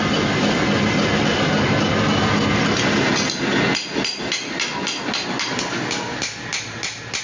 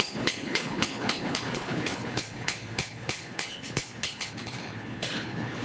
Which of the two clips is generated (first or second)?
second